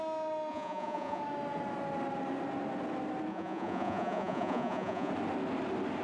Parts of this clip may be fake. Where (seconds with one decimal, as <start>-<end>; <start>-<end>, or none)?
0.5-1.2; 3.3-5.1